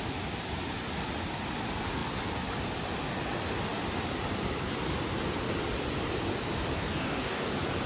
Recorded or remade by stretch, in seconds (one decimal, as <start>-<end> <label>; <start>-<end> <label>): 0.0-6.8 recorded; 6.8-7.5 remade; 7.5-7.9 recorded